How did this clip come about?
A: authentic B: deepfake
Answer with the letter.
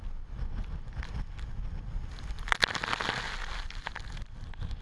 A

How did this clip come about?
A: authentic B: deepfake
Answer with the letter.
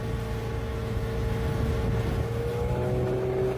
A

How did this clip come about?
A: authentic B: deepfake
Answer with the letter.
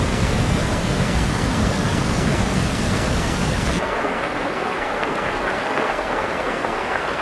B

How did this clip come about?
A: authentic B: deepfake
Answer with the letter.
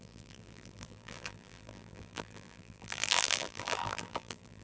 B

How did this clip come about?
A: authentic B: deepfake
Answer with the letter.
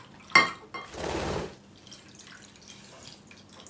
A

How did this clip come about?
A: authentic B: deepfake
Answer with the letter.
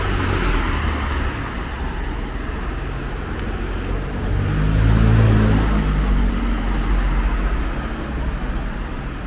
A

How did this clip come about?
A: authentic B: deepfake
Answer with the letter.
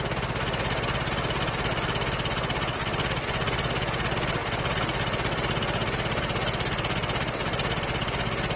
A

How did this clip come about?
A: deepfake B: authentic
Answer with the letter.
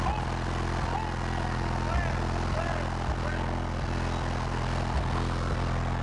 B